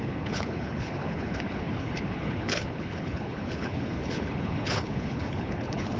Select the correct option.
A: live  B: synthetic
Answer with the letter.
B